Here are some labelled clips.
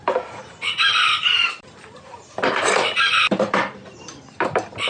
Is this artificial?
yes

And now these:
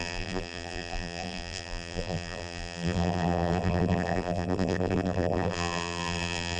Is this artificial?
yes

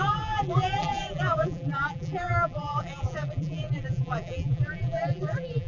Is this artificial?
yes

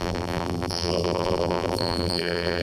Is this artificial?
yes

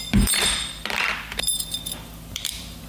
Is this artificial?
yes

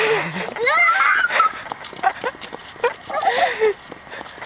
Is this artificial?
no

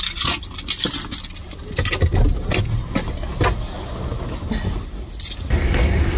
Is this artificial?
no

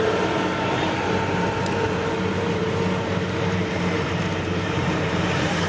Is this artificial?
yes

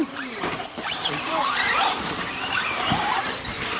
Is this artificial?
yes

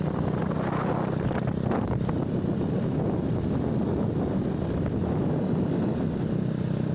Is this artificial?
no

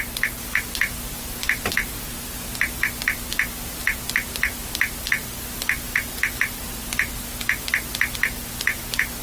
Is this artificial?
no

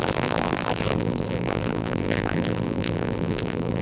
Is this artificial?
yes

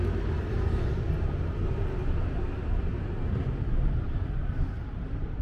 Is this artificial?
yes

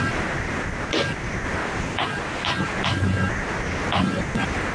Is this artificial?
no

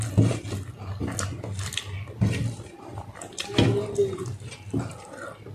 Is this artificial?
no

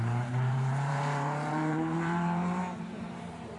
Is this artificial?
yes